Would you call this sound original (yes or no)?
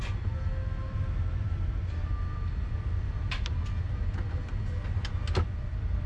yes